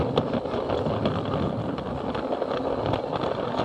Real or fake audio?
real